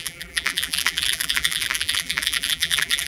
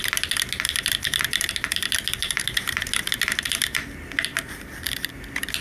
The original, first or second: second